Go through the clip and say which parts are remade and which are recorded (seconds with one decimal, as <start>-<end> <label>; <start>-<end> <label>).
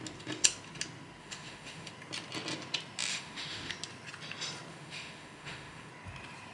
0.0-1.2 recorded; 1.2-1.9 remade; 1.9-3.1 recorded; 3.1-3.7 remade; 3.7-4.7 recorded; 4.7-5.9 remade; 5.9-6.5 recorded